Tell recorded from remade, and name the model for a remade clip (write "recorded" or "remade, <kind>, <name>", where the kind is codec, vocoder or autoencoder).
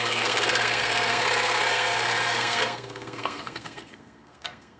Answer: remade, codec, SNAC